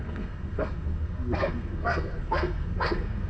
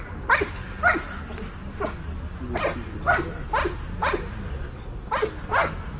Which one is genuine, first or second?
second